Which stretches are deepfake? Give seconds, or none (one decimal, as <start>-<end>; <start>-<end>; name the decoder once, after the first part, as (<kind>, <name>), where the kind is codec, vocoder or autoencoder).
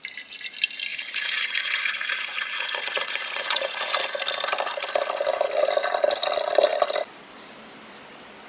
0.9-3.9 (vocoder, Vocos)